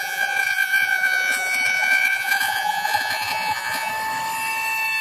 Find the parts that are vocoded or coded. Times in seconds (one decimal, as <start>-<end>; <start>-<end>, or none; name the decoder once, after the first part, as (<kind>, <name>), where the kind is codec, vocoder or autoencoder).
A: 0.0-3.9 (vocoder, Vocos)